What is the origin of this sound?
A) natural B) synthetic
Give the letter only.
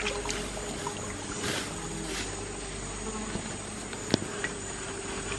A